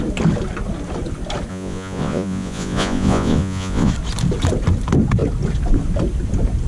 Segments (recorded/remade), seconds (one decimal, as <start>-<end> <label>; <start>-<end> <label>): 0.0-1.5 recorded; 1.5-3.9 remade; 3.9-6.7 recorded